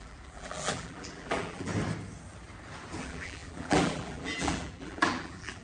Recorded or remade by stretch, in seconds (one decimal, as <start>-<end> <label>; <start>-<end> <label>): 0.0-1.7 remade; 1.7-3.0 recorded; 3.0-5.6 remade